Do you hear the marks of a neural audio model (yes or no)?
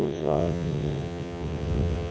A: yes